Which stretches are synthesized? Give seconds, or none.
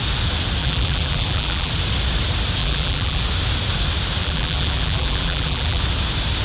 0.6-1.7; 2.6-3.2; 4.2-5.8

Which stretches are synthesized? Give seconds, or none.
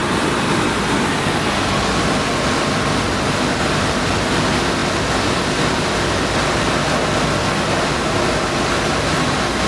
none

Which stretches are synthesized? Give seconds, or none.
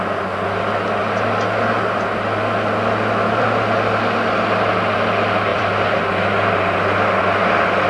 5.5-6.0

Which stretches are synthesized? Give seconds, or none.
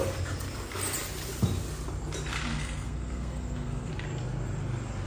2.5-3.9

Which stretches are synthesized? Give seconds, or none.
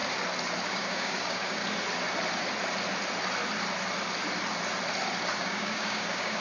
0.7-1.6; 5.4-6.4